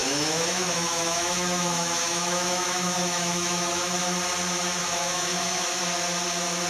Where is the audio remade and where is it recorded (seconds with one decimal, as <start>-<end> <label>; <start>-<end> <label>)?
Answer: 0.0-4.0 remade; 4.0-4.8 recorded; 4.8-5.8 remade; 5.8-6.7 recorded